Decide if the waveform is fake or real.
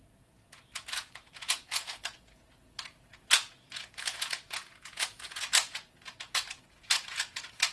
fake